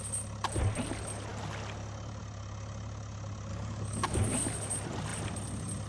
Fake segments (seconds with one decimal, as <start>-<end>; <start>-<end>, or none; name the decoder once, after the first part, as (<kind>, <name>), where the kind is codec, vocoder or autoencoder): 3.5-4.2 (codec, DAC)